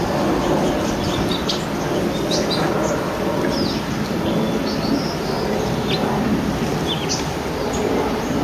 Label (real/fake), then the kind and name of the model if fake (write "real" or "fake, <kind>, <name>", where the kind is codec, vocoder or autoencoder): real